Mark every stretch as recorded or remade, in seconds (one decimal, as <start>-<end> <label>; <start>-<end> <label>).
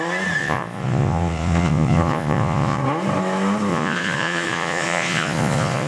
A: 0.0-0.4 recorded; 0.4-2.8 remade; 2.8-3.7 recorded; 3.7-5.9 remade